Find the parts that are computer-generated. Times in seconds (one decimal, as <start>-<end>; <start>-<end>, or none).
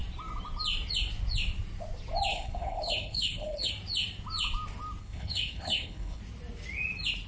2.3-3.7; 5.0-6.2